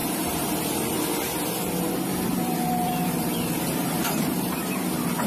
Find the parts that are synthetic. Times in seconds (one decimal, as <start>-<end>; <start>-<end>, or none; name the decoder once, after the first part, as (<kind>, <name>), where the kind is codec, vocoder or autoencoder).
0.0-0.6 (vocoder, BigVGAN v2); 2.1-4.7